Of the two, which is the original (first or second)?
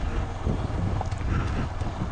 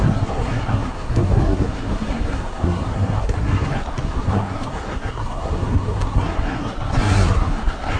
first